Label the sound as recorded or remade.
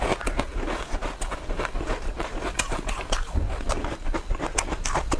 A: recorded